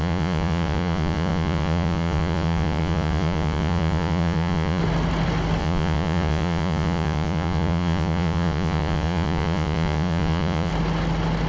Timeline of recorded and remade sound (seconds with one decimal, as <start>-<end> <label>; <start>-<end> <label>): 0.0-4.8 remade; 4.8-5.6 recorded; 5.6-10.7 remade; 10.7-11.5 recorded